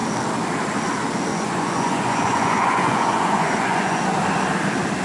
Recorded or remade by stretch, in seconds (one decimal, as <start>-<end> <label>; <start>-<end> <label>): 0.0-1.3 recorded; 1.3-4.0 remade; 4.0-5.0 recorded